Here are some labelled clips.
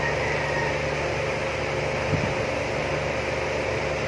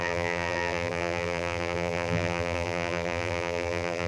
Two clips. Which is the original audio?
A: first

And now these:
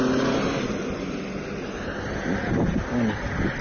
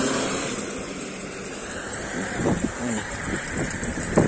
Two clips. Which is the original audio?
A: first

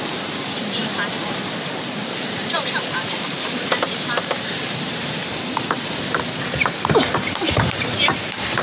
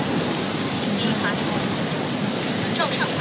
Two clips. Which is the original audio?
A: second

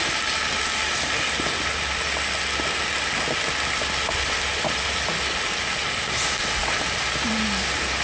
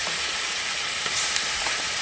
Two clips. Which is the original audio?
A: first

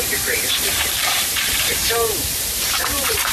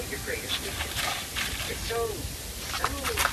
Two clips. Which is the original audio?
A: second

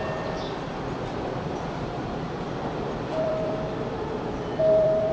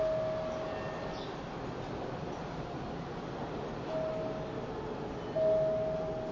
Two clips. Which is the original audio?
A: second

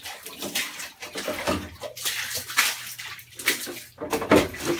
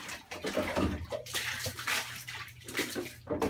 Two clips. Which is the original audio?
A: first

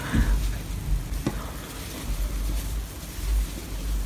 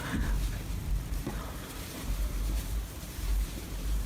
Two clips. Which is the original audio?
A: first